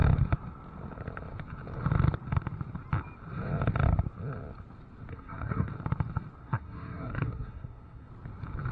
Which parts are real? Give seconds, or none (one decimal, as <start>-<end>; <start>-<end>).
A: 0.0-5.1; 5.7-6.4; 8.1-8.7